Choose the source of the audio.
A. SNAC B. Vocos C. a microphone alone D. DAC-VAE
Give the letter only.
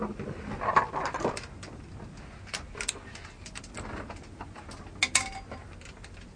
C